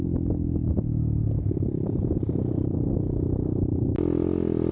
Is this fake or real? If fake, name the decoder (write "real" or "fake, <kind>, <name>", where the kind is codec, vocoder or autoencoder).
real